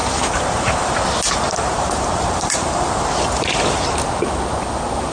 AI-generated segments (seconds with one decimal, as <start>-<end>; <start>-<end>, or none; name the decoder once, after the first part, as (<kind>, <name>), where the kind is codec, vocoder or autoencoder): 0.0-3.1 (vocoder, BigVGAN v2)